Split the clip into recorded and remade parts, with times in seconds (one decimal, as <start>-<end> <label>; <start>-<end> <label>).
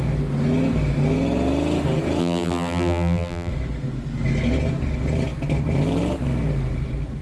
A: 0.0-2.2 recorded; 2.2-3.5 remade; 3.5-7.2 recorded